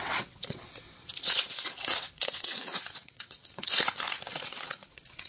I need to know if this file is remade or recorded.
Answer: remade